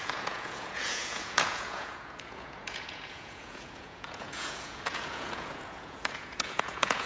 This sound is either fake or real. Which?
fake